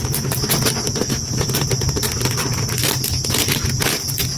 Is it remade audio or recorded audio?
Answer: recorded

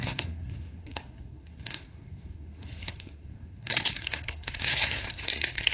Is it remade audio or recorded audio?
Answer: remade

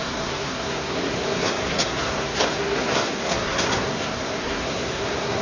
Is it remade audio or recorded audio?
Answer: remade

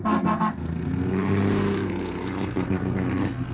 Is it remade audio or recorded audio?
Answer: remade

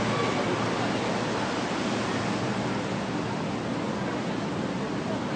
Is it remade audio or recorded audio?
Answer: recorded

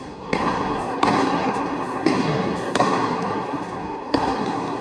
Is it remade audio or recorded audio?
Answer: remade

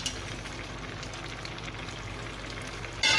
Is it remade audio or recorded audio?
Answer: recorded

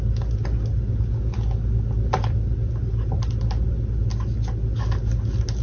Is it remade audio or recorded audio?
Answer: recorded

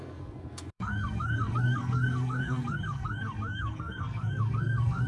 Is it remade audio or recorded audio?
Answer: remade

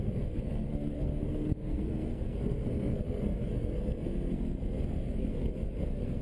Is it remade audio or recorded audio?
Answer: remade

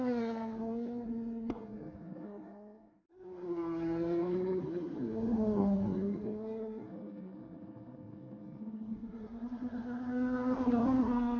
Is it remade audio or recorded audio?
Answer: remade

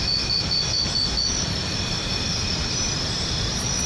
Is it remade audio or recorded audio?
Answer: recorded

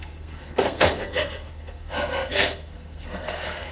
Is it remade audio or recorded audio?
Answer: remade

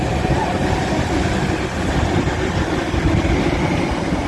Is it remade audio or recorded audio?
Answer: recorded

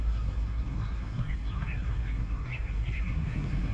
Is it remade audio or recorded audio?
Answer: remade